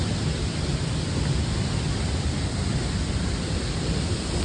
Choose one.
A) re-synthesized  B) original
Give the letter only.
B